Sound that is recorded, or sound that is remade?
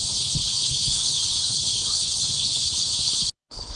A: remade